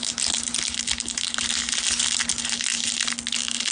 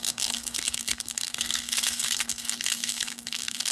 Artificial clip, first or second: second